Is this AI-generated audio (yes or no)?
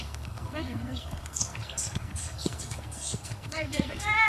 yes